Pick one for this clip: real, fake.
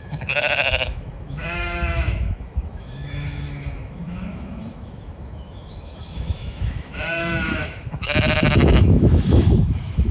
fake